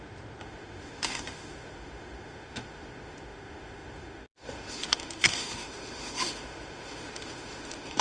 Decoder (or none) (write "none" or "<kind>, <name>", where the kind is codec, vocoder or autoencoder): autoencoder, DAC-VAE